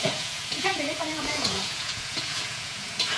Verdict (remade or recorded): remade